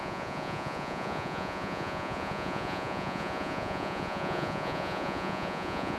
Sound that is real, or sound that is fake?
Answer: fake